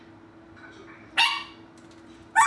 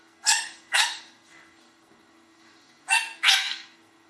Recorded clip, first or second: first